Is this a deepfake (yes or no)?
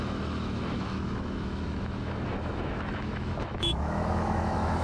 yes